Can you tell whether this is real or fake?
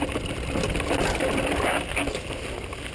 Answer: real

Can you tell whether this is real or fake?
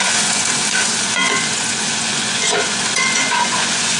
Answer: fake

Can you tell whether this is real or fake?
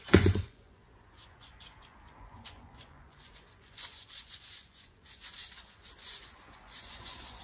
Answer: fake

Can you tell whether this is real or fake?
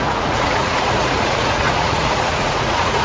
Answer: fake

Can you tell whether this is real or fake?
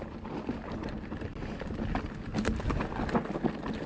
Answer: real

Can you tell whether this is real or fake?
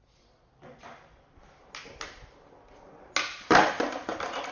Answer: real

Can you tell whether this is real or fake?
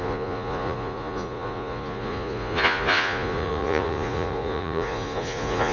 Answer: fake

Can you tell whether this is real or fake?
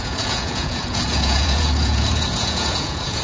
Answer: fake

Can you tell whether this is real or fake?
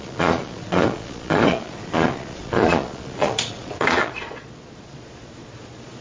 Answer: fake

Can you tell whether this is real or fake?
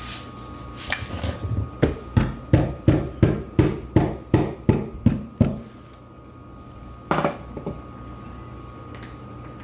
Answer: real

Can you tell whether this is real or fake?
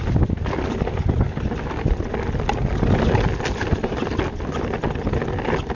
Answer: real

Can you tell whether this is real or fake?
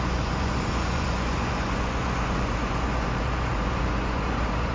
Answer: fake